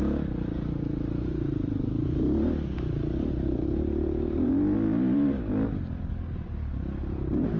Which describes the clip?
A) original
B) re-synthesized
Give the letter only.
A